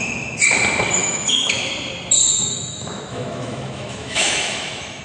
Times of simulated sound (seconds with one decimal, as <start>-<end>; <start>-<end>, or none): 1.0-1.7; 2.2-5.0